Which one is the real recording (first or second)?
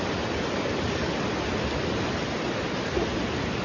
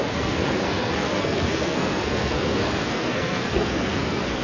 first